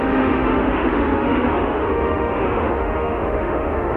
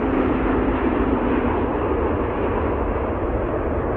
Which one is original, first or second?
second